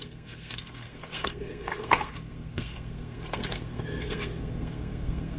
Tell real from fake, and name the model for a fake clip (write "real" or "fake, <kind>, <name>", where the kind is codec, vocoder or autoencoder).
fake, codec, SNAC